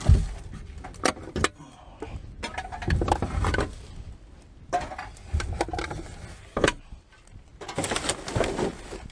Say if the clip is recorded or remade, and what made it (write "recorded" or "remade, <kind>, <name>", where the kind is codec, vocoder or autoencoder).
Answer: recorded